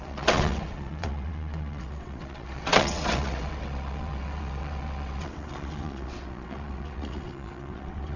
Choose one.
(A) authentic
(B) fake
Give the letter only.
B